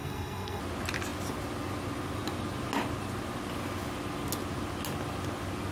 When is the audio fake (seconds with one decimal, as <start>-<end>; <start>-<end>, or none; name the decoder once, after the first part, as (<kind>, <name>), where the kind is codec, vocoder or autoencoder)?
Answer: 0.0-0.6 (codec, SNAC)